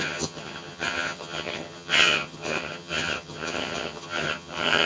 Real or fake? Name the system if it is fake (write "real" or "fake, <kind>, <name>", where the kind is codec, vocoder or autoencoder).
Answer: fake, vocoder, HiFi-GAN